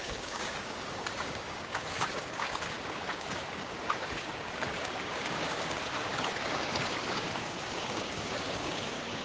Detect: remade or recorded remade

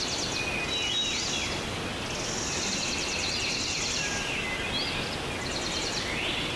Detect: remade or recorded recorded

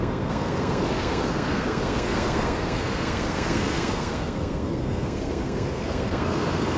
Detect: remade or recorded remade